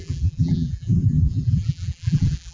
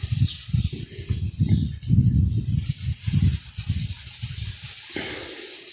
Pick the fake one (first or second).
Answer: first